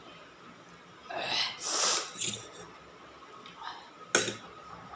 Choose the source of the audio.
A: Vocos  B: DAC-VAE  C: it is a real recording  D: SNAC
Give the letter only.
C